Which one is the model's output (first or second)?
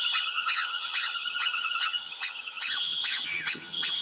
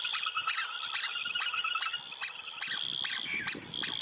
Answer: first